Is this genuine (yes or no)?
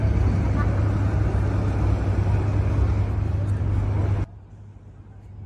yes